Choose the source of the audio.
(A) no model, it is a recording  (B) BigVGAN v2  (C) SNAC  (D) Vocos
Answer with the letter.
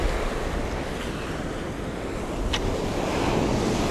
A